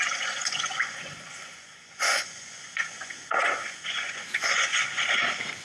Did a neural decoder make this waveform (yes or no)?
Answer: yes